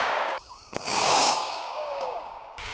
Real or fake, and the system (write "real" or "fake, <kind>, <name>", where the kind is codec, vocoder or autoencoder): fake, codec, DAC